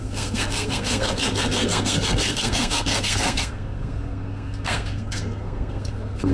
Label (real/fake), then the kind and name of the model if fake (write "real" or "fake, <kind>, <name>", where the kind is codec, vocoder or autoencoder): fake, codec, SNAC